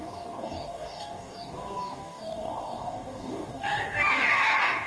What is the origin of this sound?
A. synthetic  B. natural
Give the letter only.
A